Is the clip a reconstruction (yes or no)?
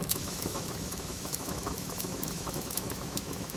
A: yes